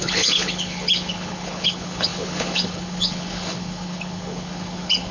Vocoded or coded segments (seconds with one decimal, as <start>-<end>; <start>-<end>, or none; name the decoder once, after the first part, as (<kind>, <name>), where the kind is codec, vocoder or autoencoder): 0.0-5.1 (codec, HILCodec)